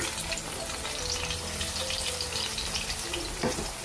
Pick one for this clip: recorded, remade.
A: remade